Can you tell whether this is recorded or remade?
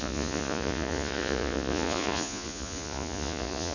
remade